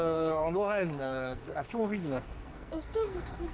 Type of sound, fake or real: fake